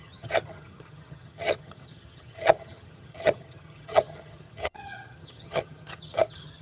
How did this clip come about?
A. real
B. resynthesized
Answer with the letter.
B